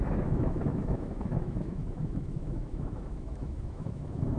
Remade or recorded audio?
remade